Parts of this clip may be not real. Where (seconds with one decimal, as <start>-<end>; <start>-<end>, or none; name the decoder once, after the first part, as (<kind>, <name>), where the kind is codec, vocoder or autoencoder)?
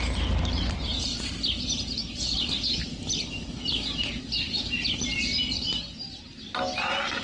none